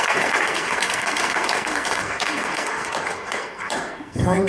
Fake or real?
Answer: fake